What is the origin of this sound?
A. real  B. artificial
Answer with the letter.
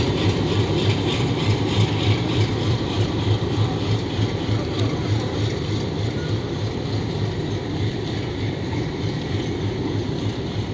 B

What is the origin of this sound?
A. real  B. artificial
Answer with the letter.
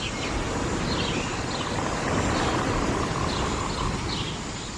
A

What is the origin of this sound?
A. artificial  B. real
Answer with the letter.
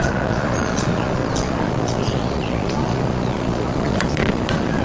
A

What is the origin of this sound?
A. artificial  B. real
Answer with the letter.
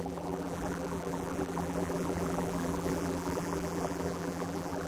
A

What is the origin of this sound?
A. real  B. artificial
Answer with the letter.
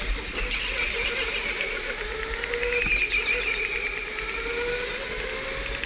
A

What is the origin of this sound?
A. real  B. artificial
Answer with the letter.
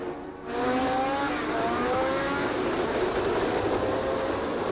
A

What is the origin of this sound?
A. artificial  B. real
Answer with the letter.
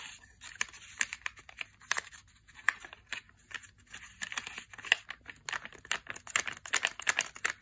B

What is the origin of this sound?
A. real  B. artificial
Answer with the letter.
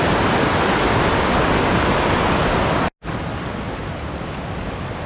A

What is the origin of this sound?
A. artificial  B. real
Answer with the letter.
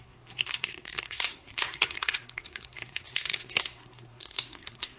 A